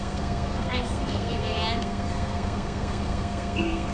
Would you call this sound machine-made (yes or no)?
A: yes